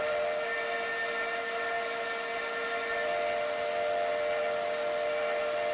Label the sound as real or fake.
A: real